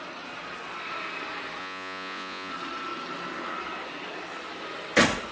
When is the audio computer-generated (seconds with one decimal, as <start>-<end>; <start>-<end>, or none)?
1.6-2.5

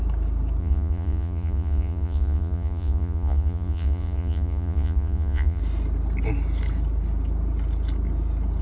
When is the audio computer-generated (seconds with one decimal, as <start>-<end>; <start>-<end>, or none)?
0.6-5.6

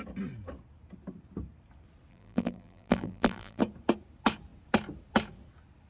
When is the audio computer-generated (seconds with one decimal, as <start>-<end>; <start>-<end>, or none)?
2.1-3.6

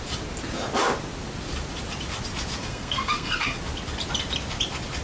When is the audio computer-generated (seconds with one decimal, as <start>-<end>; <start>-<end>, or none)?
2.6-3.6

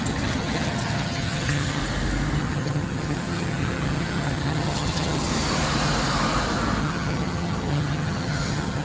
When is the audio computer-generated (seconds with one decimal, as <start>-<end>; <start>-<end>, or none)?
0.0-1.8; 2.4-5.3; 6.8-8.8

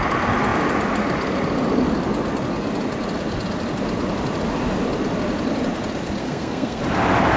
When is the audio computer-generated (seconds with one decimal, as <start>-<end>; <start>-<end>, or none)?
6.2-6.8

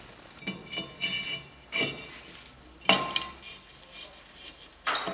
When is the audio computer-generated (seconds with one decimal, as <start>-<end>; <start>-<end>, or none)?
none